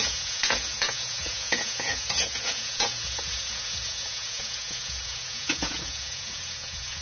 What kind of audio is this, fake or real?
fake